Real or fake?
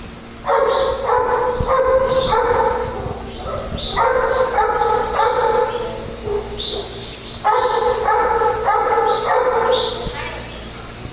real